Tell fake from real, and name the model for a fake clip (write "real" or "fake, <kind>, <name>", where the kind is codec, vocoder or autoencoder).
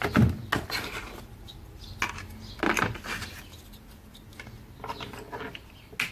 real